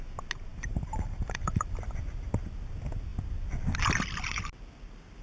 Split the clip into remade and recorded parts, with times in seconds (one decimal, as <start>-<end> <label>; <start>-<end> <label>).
0.0-0.5 recorded; 0.5-1.8 remade; 1.8-5.2 recorded